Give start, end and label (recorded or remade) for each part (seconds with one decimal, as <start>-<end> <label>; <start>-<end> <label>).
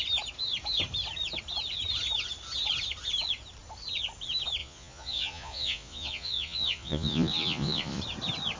0.0-4.6 recorded; 4.6-8.0 remade; 8.0-8.6 recorded